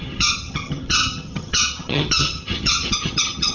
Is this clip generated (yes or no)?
yes